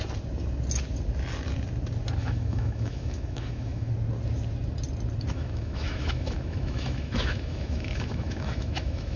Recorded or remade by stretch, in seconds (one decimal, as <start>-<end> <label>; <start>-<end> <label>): 0.0-2.2 recorded; 2.2-3.9 remade; 3.9-5.3 recorded; 5.3-9.2 remade